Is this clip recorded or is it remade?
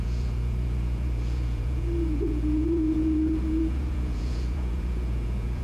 remade